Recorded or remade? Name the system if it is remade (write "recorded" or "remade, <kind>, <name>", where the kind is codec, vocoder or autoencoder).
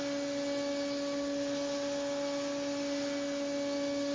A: recorded